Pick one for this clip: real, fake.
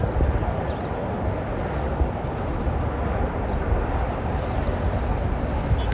real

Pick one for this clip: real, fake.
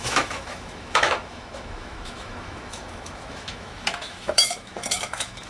fake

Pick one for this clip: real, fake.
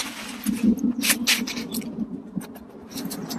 real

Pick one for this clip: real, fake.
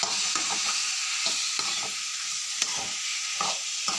real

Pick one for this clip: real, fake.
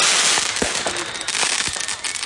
real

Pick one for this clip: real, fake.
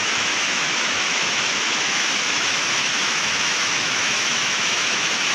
fake